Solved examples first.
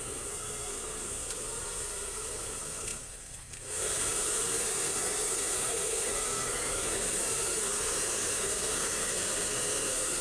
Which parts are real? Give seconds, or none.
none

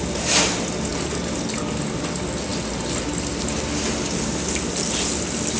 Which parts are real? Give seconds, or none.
0.0-5.6

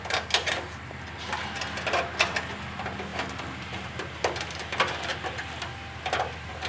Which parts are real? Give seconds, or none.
0.0-6.7